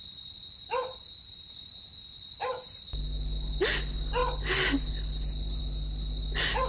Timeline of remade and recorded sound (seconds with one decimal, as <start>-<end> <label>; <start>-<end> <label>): 0.0-6.7 recorded